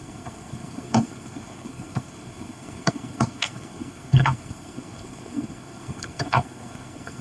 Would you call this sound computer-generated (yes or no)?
yes